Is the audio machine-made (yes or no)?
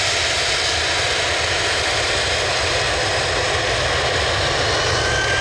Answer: no